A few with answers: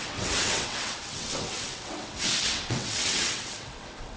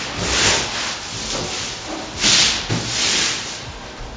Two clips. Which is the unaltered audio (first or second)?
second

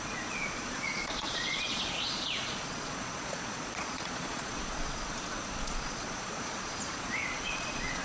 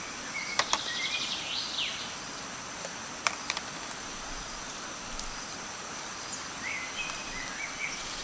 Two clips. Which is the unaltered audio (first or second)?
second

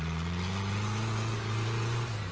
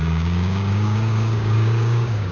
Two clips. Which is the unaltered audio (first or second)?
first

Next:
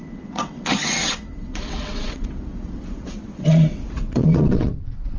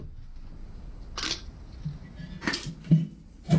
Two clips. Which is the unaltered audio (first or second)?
second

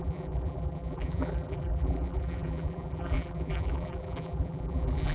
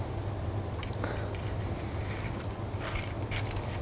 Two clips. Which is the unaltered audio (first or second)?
second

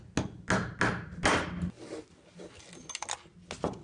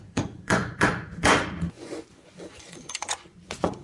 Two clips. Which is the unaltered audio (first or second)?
first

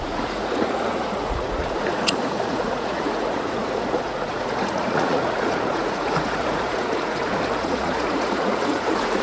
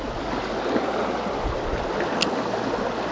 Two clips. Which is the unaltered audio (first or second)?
second